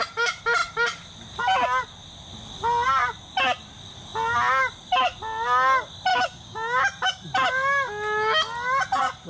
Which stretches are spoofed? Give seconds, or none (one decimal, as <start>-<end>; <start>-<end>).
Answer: 6.1-6.8